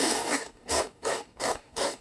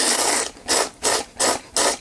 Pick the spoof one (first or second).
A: first